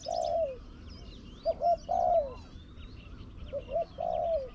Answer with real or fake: real